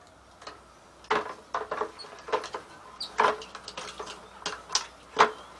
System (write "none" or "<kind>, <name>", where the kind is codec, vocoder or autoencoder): none